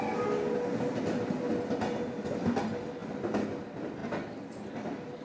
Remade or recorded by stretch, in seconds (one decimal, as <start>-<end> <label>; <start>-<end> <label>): 0.0-5.2 recorded